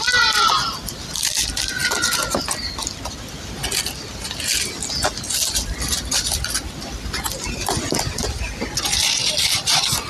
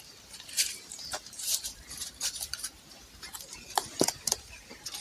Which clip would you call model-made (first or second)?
second